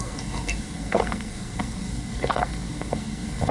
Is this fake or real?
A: fake